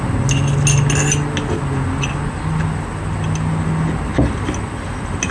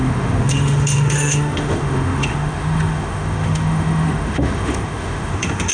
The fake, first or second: second